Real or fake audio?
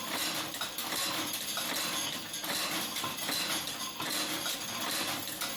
real